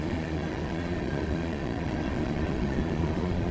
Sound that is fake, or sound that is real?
fake